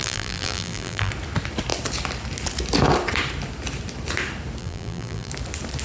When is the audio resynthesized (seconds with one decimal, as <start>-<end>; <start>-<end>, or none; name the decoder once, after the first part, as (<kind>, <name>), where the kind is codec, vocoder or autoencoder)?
0.0-1.1 (vocoder, BigVGAN v2); 4.6-5.3